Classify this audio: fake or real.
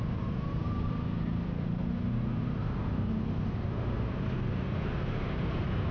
real